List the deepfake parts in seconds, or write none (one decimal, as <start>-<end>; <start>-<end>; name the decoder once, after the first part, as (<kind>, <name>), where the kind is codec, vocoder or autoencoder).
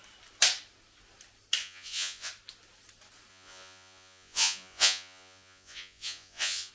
1.6-2.3 (vocoder, Vocos); 3.3-6.7